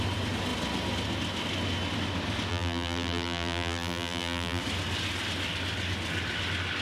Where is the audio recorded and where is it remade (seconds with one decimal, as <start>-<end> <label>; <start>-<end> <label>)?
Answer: 0.0-2.5 recorded; 2.5-4.6 remade; 4.6-6.8 recorded